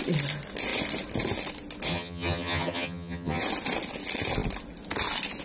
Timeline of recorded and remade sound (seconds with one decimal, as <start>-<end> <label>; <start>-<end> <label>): 0.0-1.9 recorded; 1.9-3.4 remade; 3.4-5.4 recorded